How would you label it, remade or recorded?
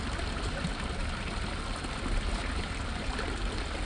recorded